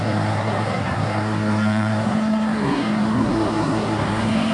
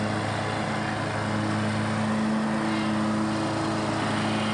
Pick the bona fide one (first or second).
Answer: second